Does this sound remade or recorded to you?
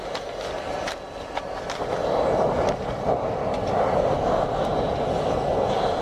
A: recorded